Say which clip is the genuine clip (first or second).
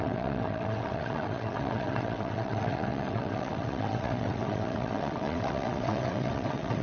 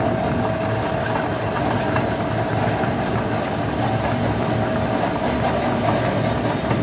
second